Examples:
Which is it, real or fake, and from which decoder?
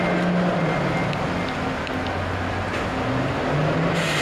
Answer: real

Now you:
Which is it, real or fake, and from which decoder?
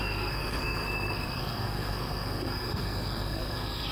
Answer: fake, codec, SNAC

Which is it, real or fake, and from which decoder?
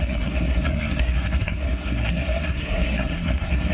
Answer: fake, codec, SNAC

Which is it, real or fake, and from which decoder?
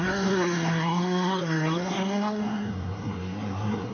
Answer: fake, codec, SNAC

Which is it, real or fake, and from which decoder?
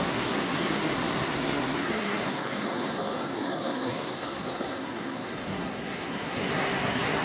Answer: fake, codec, SNAC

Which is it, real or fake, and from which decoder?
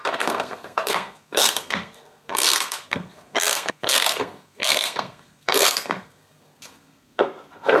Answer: fake, codec, SNAC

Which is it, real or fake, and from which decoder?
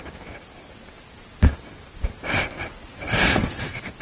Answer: real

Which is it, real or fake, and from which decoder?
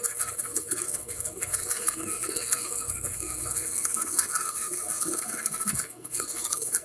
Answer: fake, codec, SNAC